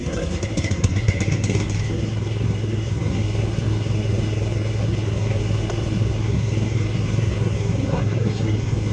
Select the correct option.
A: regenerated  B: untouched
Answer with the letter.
A